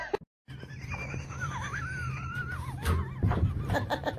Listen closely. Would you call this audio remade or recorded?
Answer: remade